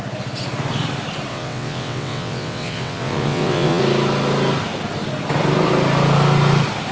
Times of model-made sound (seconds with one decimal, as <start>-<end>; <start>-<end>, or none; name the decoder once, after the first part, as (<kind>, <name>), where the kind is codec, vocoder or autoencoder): 1.3-3.8 (vocoder, WaveNeXt)